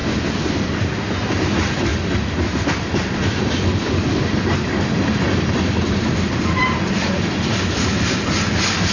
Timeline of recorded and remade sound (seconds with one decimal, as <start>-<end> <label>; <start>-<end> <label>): 0.0-0.9 remade; 0.9-8.9 recorded